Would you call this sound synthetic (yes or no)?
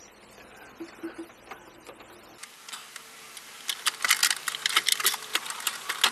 no